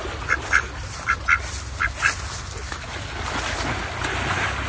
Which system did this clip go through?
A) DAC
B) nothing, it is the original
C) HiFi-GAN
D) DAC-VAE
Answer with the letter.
B